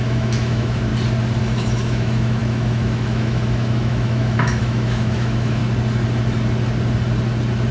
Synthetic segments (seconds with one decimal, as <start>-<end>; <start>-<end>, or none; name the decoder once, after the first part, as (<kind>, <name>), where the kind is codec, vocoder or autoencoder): 0.0-0.9 (autoencoder, DAC-VAE); 1.4-5.6